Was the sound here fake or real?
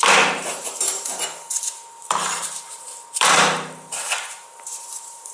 fake